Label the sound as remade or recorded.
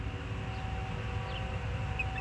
recorded